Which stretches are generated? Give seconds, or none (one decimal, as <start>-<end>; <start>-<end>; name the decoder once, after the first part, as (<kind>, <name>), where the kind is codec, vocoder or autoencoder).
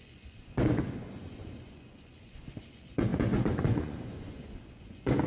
0.0-5.3 (vocoder, Vocos)